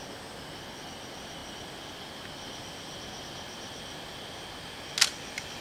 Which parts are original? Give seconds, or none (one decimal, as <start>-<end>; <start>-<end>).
0.0-5.6